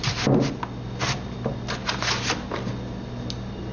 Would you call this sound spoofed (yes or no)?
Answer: no